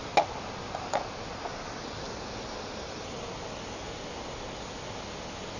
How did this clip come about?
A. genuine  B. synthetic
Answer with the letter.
A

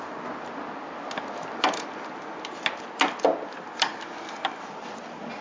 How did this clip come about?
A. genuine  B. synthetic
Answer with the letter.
A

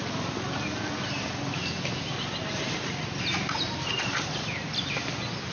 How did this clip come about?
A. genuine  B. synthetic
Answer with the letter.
A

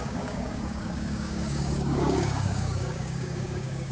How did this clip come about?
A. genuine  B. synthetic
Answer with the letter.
B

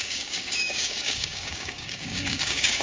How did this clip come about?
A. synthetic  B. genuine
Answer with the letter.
A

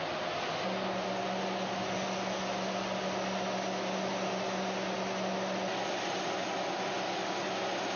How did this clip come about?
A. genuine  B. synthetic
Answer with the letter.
A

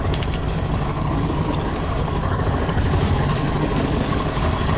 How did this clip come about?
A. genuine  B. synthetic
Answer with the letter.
B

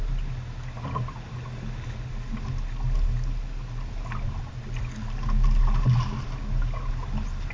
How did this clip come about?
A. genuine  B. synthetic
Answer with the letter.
A